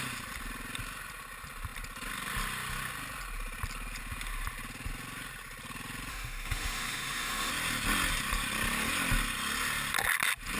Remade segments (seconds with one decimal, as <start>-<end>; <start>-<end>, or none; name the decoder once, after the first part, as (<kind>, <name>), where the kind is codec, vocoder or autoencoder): 6.1-7.5 (autoencoder, DAC-VAE)

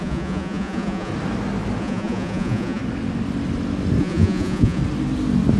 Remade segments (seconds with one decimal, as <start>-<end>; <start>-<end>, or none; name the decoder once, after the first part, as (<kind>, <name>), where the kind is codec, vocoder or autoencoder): 0.0-1.1 (vocoder, Vocos); 1.8-2.8; 4.0-4.8